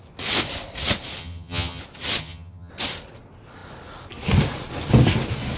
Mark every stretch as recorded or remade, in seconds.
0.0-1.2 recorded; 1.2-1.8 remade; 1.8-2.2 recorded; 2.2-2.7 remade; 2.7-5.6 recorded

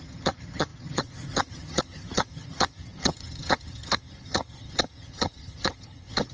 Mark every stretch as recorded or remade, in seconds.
0.0-6.3 remade